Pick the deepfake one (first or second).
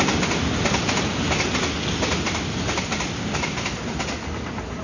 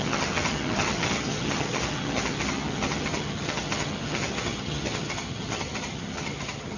second